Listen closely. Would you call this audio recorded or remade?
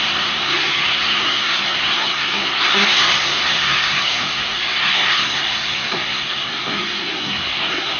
remade